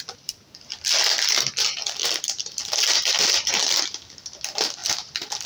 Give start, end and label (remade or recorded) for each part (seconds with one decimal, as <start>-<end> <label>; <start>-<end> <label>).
0.0-5.5 recorded